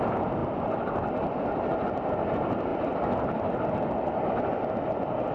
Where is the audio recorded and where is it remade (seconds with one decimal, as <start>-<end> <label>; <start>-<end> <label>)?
0.0-5.3 recorded